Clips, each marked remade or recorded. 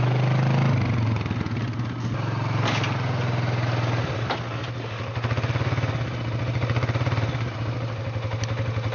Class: recorded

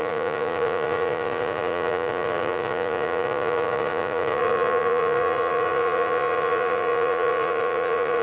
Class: remade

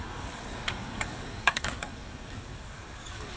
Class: remade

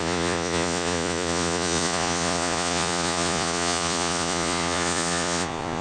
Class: remade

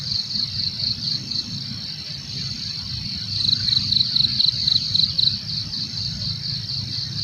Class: recorded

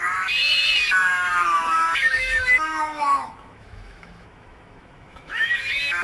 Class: remade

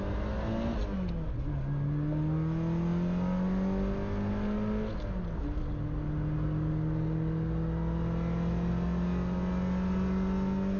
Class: recorded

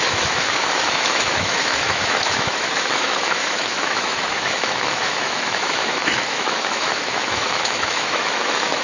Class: remade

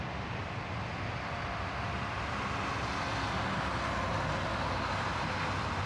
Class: recorded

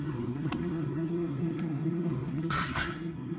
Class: remade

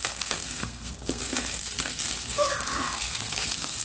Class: remade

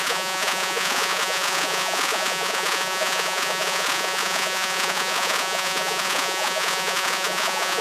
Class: remade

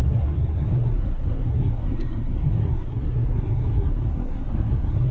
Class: remade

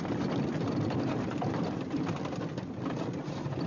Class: recorded